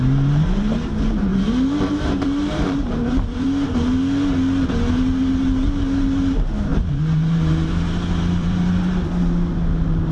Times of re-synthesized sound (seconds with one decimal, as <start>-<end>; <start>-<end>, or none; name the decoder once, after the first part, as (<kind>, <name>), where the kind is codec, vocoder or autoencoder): 1.3-3.9 (vocoder, BigVGAN v2); 6.7-8.8